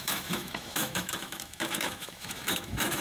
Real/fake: fake